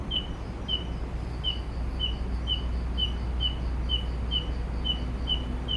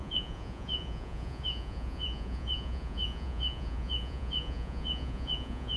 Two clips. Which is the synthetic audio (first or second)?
second